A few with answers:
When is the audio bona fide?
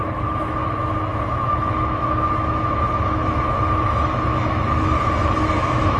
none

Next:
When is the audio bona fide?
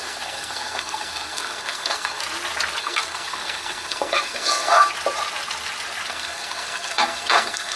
2.2-2.8; 4.9-6.1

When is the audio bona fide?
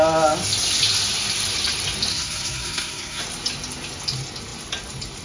0.0-2.1; 3.2-5.2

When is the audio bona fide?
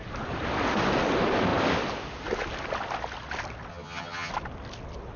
0.0-3.7; 4.3-5.2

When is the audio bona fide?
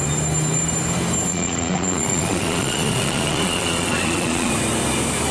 0.0-1.3; 4.5-5.3